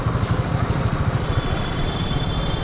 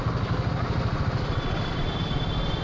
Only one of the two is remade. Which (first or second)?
first